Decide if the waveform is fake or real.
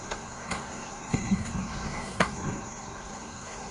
fake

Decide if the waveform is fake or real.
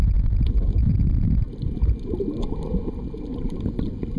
real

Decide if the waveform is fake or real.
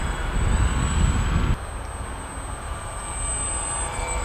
real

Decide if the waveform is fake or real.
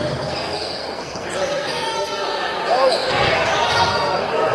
fake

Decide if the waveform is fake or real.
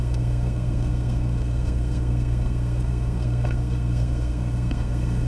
fake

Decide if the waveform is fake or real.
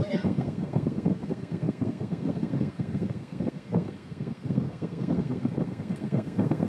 fake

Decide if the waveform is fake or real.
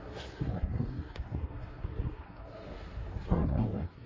fake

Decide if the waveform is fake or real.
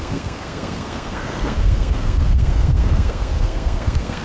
fake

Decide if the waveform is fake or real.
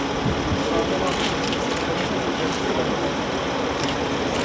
real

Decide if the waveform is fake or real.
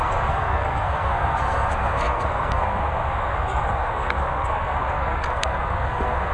fake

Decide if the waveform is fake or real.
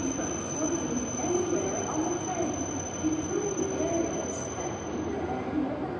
real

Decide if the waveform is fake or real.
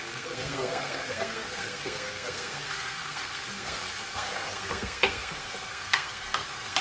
fake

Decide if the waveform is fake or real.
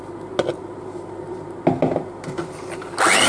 real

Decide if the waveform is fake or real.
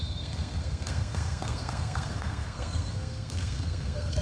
fake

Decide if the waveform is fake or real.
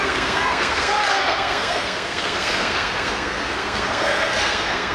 fake